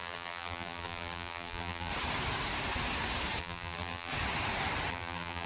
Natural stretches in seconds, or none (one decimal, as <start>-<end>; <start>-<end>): 1.9-3.4; 4.1-4.9